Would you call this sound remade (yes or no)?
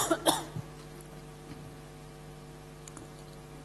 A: no